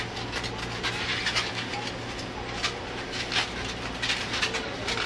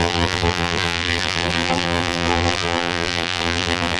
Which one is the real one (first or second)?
first